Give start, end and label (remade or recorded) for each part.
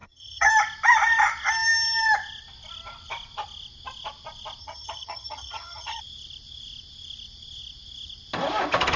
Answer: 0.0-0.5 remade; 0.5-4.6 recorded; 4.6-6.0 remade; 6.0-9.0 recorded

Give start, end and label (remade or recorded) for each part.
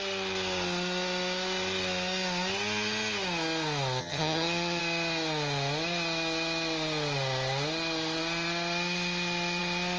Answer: 0.0-4.0 recorded; 4.0-4.8 remade; 4.8-10.0 recorded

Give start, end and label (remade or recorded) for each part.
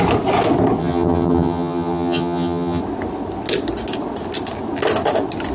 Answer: 0.0-0.8 recorded; 0.8-2.8 remade; 2.8-5.5 recorded